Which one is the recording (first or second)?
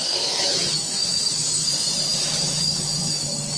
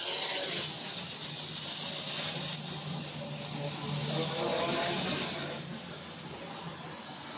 second